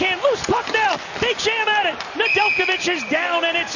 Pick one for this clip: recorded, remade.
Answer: remade